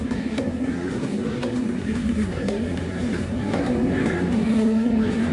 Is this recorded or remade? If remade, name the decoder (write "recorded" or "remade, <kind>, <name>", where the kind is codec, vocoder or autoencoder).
remade, codec, SNAC